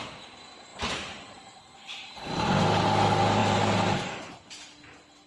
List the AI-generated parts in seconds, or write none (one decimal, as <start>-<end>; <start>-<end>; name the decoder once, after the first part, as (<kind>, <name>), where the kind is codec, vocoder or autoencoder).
0.7-2.1 (vocoder, BigVGAN v2)